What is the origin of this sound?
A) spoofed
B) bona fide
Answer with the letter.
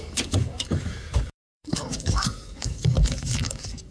A